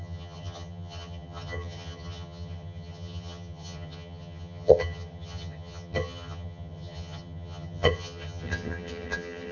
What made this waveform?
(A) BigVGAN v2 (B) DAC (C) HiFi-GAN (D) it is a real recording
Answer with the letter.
C